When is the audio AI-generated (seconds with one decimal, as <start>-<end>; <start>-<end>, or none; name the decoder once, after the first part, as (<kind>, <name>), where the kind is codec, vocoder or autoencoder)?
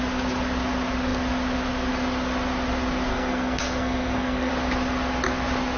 3.1-4.5 (codec, SNAC)